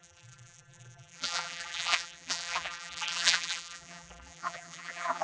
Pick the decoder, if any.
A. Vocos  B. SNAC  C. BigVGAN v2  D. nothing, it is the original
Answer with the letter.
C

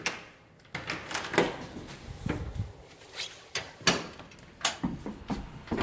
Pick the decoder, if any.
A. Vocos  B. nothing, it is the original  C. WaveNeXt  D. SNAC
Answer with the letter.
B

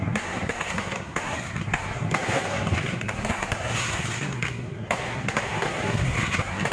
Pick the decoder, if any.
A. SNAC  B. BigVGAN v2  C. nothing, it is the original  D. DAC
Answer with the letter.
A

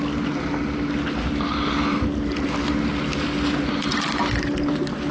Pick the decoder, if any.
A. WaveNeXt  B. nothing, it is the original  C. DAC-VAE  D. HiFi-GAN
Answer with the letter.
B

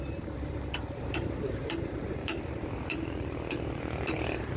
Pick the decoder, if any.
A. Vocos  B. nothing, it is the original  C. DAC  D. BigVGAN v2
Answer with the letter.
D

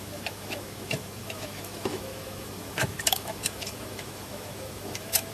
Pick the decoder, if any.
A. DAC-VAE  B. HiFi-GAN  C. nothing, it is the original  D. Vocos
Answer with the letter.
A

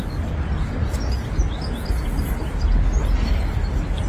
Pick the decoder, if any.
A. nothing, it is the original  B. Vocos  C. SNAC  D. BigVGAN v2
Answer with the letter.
A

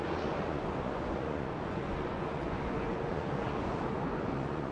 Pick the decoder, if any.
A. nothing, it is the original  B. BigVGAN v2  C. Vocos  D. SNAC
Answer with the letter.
C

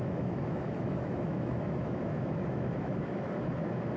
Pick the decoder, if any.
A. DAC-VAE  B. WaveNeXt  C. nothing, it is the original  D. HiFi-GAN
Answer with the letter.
A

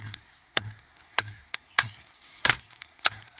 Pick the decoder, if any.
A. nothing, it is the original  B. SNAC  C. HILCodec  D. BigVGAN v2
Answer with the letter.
B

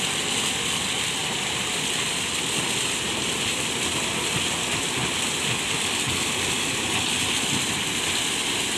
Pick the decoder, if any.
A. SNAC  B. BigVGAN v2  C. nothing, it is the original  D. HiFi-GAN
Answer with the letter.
C